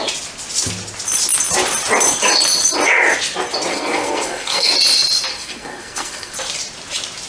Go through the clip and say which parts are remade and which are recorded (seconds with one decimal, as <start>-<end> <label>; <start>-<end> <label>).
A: 0.0-3.7 recorded; 3.7-4.7 remade; 4.7-5.3 recorded; 5.3-6.3 remade; 6.3-7.3 recorded